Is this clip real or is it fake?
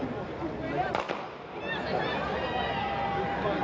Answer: real